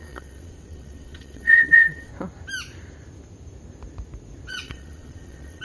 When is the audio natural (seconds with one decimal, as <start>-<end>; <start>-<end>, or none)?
2.1-4.5